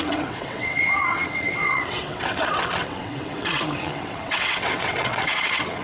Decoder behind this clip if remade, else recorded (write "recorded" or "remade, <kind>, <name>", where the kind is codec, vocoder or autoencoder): remade, vocoder, WaveNeXt